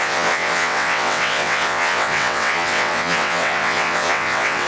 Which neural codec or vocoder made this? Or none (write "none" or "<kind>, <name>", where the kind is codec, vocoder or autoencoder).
vocoder, WaveNeXt